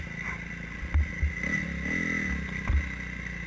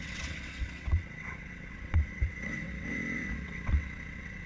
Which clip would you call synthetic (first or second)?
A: second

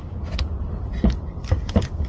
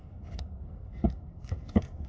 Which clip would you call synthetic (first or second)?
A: second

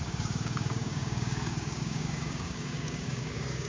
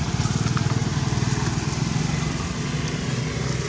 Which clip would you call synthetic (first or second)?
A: first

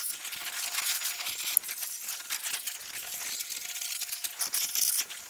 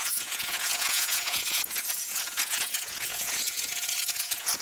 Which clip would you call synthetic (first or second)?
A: second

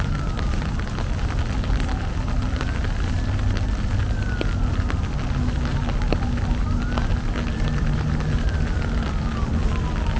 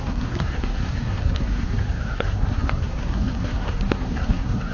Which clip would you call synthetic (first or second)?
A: second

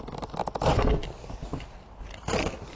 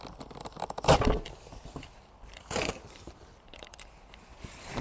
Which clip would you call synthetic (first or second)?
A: second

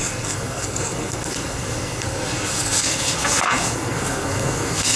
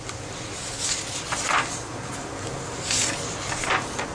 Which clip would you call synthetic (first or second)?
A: first